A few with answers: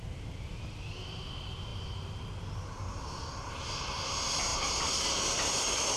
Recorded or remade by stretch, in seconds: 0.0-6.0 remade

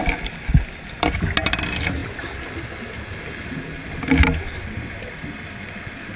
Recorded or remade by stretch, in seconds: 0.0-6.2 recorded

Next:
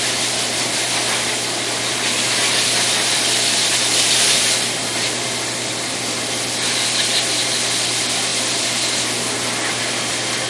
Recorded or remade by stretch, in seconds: 0.0-10.5 recorded